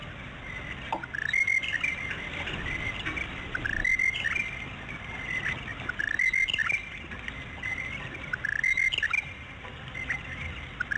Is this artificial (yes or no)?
no